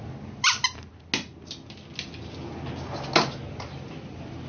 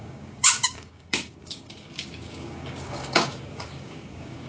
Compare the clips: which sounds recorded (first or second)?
first